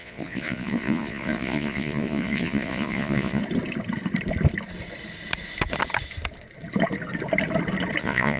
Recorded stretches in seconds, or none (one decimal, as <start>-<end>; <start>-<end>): 3.4-8.0